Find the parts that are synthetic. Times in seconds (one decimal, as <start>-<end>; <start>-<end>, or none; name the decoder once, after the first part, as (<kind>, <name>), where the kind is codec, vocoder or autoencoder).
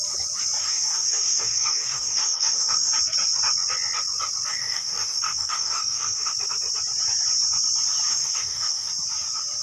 0.6-2.9 (codec, DAC); 4.5-6.3; 8.1-8.9